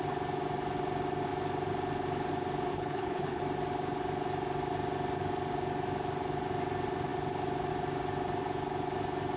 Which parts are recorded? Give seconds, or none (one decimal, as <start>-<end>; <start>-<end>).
0.0-2.7; 3.4-9.4